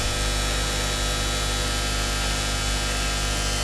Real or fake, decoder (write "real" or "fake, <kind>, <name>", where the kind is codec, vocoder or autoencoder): real